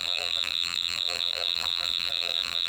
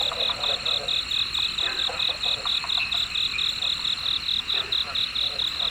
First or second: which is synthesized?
first